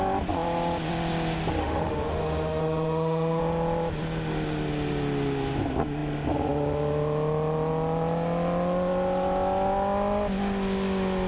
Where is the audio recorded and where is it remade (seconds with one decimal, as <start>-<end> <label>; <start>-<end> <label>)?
0.0-1.6 recorded; 1.6-3.4 remade; 3.4-11.3 recorded